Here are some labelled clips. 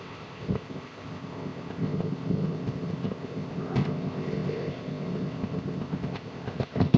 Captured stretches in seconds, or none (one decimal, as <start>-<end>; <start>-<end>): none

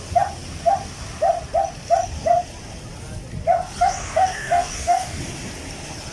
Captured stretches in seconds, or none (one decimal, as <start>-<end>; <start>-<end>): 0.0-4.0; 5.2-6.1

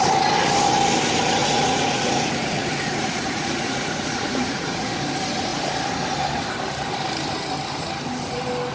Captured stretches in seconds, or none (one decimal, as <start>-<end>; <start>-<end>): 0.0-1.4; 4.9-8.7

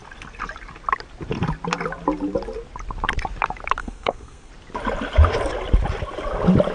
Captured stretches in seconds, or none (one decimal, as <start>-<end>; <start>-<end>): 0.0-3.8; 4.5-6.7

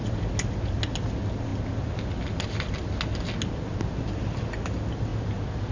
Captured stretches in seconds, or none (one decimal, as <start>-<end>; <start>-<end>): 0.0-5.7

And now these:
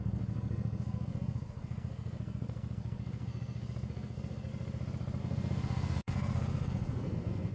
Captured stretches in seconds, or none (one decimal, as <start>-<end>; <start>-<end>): 4.5-5.2

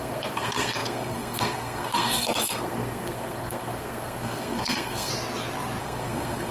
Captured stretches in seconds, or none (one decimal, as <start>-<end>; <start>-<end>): 5.1-5.8

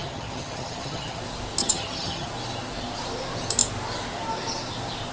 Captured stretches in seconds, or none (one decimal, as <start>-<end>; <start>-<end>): 1.2-1.6; 2.3-5.1